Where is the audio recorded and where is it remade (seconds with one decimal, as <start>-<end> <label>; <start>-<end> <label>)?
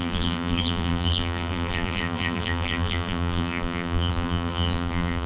0.0-5.3 remade